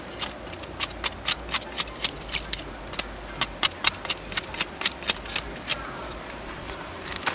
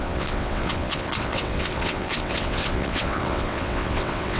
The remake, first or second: second